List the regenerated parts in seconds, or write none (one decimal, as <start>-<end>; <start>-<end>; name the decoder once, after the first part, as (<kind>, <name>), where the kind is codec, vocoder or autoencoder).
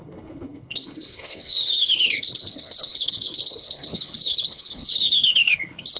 0.0-6.0 (codec, HILCodec)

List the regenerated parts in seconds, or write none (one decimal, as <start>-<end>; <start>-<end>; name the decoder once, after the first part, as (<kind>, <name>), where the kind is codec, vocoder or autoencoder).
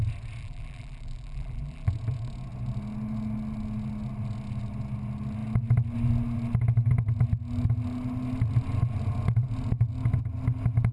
0.4-1.9 (vocoder, BigVGAN v2)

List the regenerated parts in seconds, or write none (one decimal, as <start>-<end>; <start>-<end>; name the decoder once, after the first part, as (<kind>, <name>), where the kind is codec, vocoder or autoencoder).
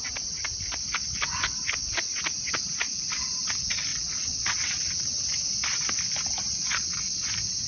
3.9-5.2 (vocoder, Vocos); 6.5-7.3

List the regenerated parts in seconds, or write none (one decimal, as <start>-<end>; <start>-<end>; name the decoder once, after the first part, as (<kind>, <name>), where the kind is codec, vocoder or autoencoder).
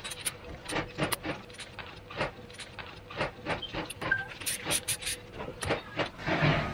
3.7-5.6 (vocoder, BigVGAN v2)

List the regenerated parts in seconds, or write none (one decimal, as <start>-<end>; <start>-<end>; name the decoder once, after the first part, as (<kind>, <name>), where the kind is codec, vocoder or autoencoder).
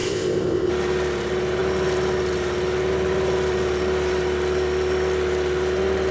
0.0-0.7 (codec, ZipCodec)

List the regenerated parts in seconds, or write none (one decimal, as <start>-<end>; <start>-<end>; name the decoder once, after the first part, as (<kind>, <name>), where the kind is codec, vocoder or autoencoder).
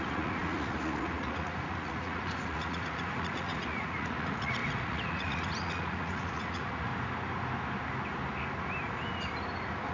0.0-6.9 (vocoder, Vocos)